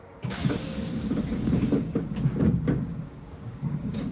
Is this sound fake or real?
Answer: fake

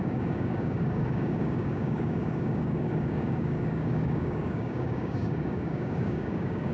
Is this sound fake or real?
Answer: fake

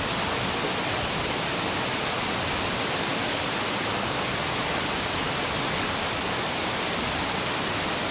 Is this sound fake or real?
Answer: real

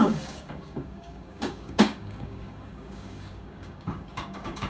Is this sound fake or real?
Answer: fake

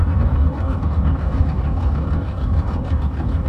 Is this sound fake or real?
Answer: fake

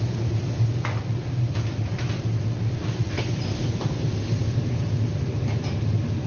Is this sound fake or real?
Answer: real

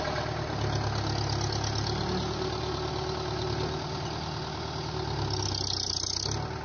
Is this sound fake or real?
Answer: real